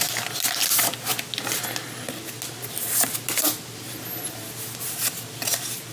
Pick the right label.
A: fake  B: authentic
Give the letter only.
B